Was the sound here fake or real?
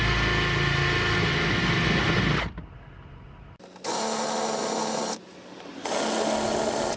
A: real